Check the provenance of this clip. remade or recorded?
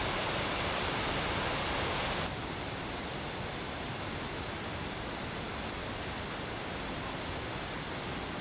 recorded